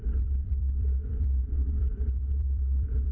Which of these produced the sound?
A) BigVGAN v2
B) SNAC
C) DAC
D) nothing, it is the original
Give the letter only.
A